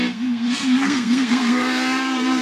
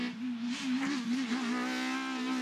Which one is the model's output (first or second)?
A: first